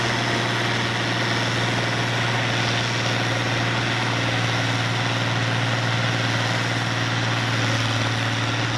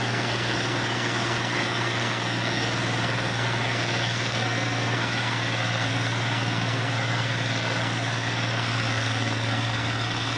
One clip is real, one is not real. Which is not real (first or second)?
second